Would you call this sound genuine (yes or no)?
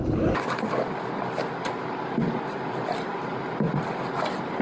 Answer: no